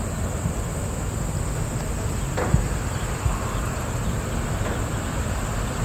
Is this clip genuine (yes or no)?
yes